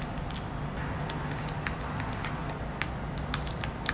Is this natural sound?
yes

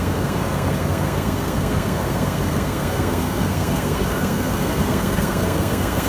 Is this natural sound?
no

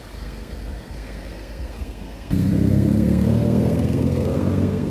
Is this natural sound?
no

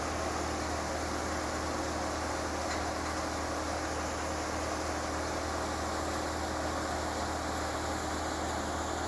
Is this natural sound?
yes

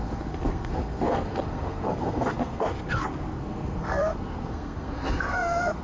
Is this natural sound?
no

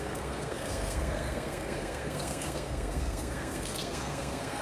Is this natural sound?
no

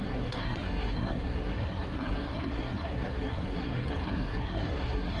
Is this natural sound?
no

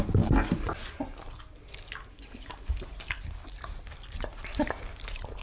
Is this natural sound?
yes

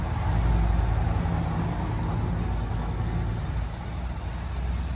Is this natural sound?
yes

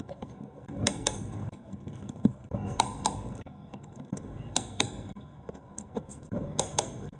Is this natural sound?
no